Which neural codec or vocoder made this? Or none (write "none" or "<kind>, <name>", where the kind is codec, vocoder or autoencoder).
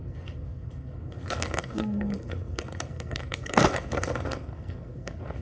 codec, SNAC